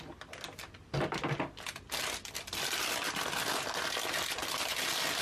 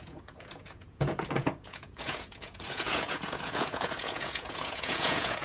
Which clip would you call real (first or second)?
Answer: first